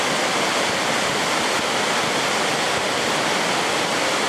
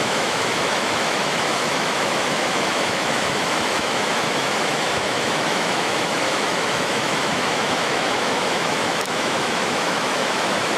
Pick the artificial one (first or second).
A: second